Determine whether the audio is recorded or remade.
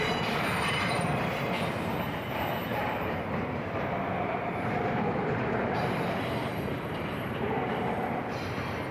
remade